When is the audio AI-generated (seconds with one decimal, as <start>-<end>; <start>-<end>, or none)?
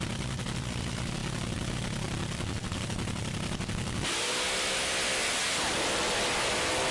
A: none